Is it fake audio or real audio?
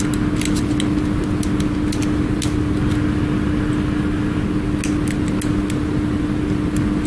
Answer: real